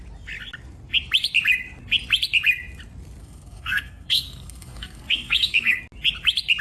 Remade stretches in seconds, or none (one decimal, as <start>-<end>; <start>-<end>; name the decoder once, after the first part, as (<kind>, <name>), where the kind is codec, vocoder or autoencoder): 3.2-5.8 (codec, SNAC)